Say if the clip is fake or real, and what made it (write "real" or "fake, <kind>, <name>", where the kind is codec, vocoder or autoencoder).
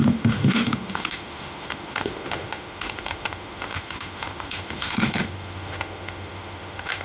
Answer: fake, autoencoder, DAC-VAE